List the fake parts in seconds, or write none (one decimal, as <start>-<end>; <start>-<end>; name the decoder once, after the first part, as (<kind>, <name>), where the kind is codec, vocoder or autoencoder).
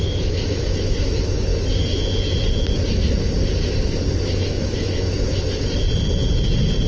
0.0-1.5 (autoencoder, DAC-VAE); 4.3-5.2